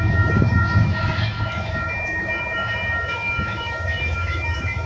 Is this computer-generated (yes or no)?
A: yes